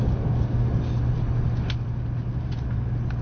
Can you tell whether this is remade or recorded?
recorded